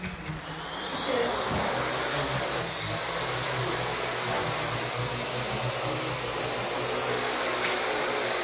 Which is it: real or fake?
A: real